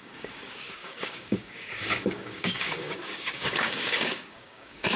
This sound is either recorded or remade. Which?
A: remade